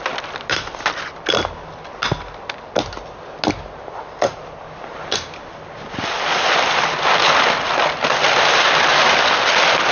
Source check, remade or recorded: recorded